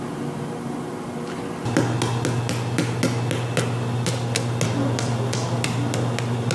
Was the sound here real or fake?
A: real